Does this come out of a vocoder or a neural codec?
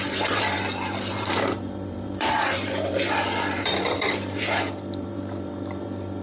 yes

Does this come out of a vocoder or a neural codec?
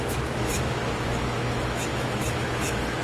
yes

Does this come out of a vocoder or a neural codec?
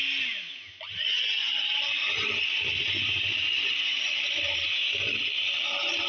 no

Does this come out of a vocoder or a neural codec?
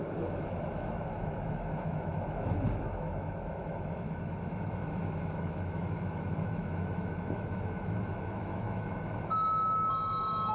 yes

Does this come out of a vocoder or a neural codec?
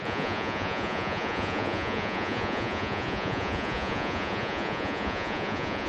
yes